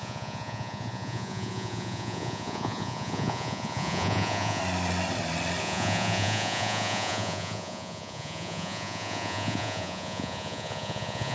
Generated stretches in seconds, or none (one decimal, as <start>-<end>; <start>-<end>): 0.0-4.6; 5.6-11.3

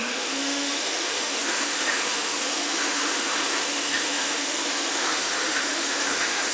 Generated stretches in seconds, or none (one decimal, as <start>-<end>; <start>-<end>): 0.0-6.5

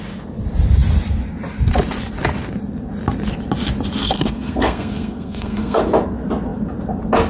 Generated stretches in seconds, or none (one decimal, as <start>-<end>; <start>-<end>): 4.0-5.8

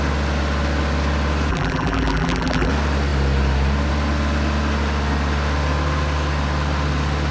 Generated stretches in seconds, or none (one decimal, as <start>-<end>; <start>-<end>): 1.5-2.7